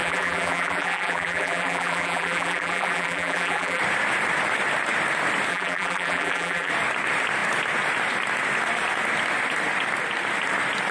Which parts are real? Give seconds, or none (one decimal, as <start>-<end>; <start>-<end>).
3.8-5.5; 6.7-10.9